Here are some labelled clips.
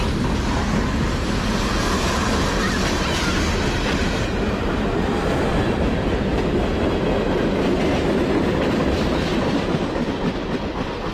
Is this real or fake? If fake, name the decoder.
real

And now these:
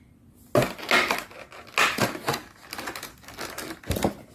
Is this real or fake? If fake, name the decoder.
real